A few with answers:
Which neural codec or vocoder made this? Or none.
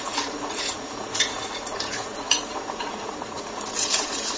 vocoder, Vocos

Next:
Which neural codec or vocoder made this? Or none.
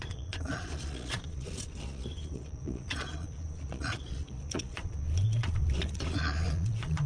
vocoder, Vocos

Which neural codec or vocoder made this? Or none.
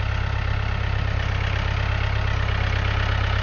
none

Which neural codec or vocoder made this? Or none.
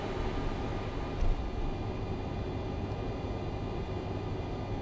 none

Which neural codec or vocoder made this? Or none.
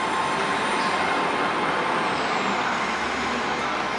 none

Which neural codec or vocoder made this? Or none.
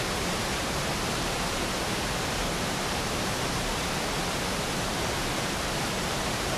vocoder, BigVGAN v2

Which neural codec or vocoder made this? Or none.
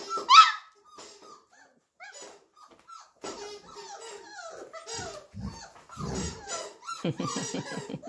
none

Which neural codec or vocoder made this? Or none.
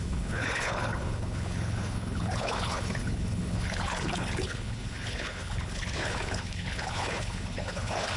codec, HILCodec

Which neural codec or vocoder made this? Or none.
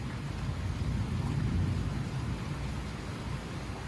none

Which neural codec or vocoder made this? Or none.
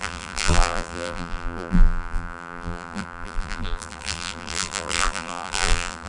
vocoder, BigVGAN v2